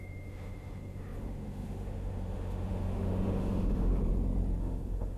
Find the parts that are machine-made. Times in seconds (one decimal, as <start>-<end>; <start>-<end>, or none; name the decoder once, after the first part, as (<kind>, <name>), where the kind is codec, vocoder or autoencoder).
0.0-3.9 (autoencoder, DAC-VAE); 4.6-5.2

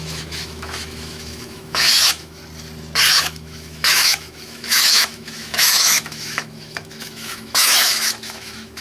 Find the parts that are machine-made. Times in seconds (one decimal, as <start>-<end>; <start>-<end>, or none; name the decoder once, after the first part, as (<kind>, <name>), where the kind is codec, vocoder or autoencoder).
0.0-2.4 (autoencoder, DAC-VAE); 3.1-8.8

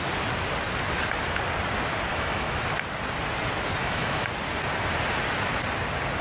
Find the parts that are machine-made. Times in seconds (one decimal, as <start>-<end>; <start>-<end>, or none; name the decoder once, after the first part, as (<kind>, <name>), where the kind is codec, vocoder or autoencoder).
2.1-2.6 (autoencoder, DAC-VAE); 3.8-4.3

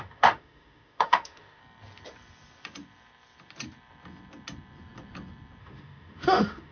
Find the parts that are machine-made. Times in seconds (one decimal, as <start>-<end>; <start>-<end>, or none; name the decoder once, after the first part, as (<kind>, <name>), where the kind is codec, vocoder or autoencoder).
0.0-1.6 (autoencoder, DAC-VAE); 5.6-6.7

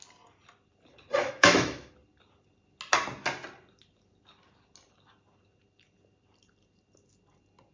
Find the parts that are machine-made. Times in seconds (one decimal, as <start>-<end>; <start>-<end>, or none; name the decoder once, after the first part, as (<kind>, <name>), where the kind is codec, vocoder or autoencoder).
1.2-1.9 (autoencoder, DAC-VAE)

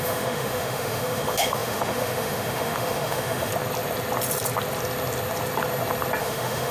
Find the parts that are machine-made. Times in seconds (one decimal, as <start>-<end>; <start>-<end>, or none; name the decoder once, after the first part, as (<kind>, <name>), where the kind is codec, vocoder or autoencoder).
0.0-3.5 (autoencoder, DAC-VAE); 6.2-6.7